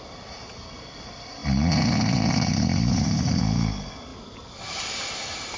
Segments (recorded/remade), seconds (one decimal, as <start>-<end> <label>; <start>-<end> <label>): 0.0-5.6 recorded